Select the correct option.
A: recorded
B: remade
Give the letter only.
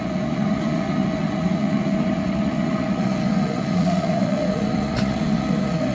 B